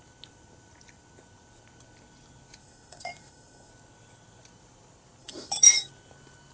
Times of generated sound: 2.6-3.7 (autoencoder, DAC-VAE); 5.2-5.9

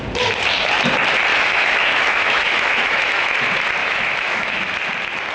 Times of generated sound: 1.3-3.3 (autoencoder, DAC-VAE); 3.8-4.7